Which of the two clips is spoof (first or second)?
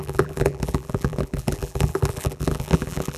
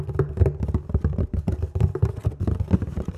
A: first